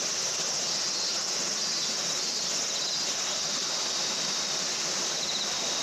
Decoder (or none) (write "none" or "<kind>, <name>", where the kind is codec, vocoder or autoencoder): none